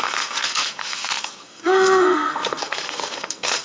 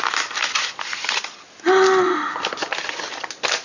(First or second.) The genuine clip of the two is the second